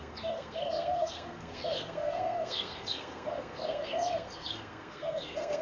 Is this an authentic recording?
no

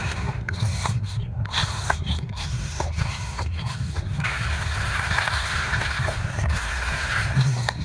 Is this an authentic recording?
no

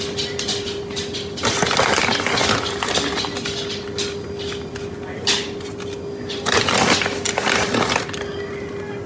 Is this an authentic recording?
yes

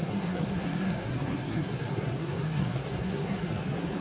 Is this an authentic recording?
no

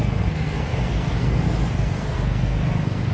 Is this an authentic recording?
no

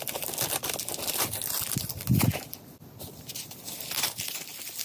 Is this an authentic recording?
yes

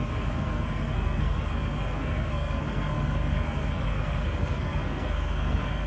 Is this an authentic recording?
no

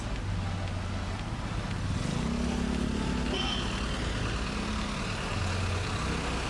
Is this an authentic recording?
yes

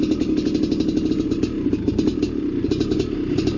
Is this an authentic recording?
yes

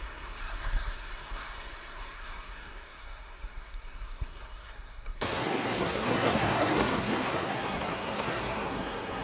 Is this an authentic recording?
no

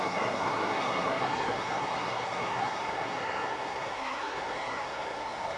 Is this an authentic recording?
no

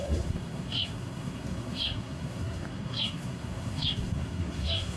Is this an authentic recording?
no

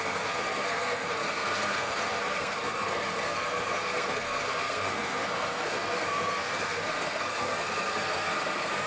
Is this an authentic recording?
no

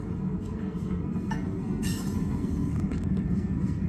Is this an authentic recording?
no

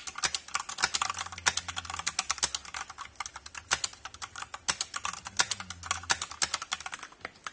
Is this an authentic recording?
yes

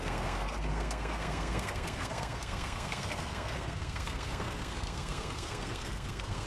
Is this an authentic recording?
no